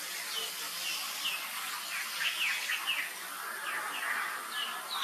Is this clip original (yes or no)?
yes